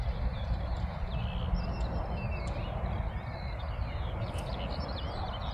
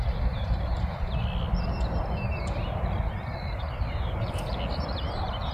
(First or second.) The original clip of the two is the first